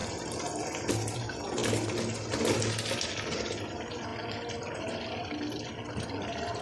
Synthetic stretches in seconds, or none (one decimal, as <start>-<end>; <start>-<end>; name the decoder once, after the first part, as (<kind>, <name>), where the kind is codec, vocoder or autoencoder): 0.9-1.6 (vocoder, BigVGAN v2); 3.6-6.6